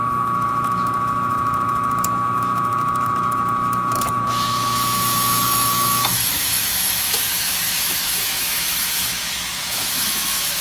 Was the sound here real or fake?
fake